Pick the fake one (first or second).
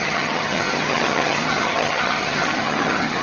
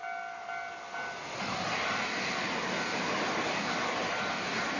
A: first